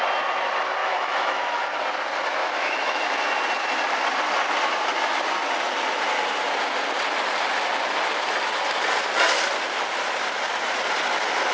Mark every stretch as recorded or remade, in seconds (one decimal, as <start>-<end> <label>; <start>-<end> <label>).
0.0-0.8 recorded; 0.8-1.6 remade; 1.6-2.4 recorded; 2.4-3.2 remade; 3.2-11.5 recorded